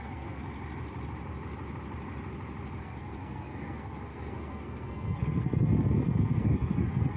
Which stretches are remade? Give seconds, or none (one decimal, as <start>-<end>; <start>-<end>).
0.0-0.4; 2.8-7.2